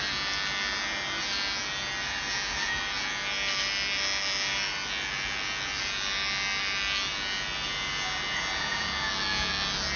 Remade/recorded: recorded